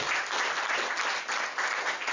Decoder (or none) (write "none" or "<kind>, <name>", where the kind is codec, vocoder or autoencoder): none